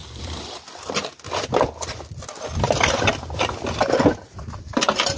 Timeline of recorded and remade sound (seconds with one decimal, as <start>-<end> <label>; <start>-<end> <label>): 0.0-2.1 remade; 2.1-2.5 recorded; 2.5-3.1 remade; 3.1-5.2 recorded